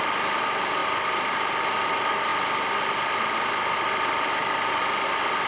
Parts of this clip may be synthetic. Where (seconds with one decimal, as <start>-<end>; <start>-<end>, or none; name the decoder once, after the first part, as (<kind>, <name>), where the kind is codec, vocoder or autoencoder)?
none